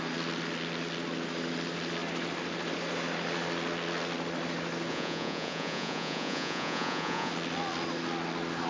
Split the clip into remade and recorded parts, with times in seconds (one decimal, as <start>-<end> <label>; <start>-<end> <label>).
0.0-4.9 recorded; 4.9-7.3 remade; 7.3-8.7 recorded